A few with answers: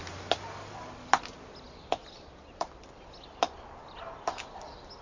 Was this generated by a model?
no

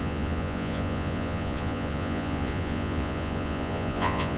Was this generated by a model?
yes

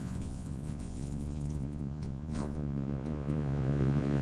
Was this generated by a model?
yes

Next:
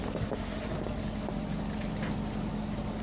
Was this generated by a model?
no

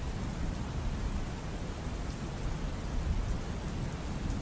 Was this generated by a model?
no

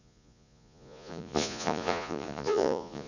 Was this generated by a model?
yes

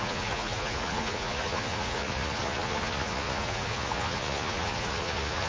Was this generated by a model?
yes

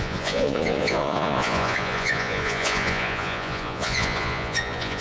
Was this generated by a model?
yes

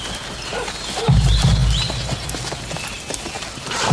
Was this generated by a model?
no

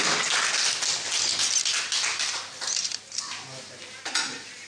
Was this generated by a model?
no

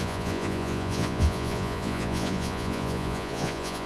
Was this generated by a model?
yes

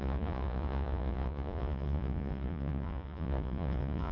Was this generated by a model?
yes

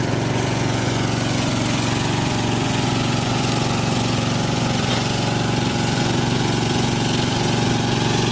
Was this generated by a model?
yes